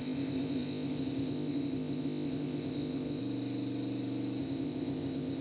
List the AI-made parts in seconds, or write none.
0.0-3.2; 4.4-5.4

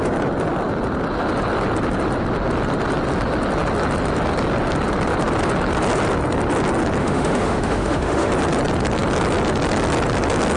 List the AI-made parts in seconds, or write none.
7.0-8.3

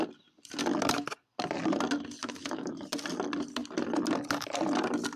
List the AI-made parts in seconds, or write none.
2.2-2.7

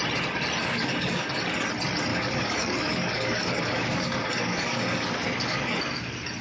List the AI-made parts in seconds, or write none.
0.6-1.4; 2.1-5.8

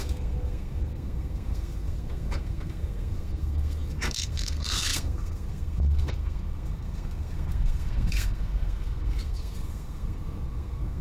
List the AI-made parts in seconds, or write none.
0.0-11.0